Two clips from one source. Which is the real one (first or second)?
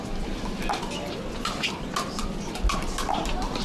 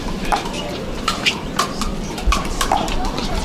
first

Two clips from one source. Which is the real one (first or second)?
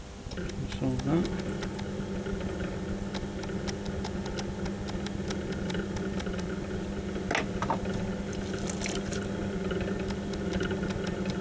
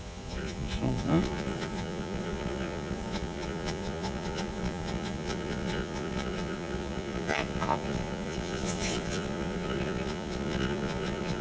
first